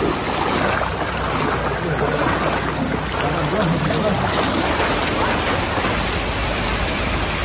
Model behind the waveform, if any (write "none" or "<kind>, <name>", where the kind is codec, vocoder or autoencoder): none